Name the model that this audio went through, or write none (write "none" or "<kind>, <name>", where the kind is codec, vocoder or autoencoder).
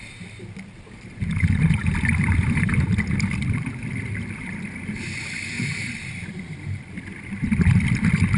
vocoder, BigVGAN v2